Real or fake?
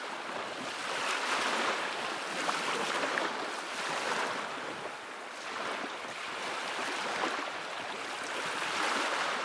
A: real